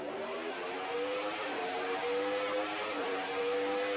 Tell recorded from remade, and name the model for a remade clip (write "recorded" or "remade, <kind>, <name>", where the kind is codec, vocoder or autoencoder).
remade, vocoder, BigVGAN v2